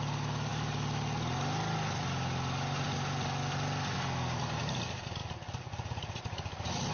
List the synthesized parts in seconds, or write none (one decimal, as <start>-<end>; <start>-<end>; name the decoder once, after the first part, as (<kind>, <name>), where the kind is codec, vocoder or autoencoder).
none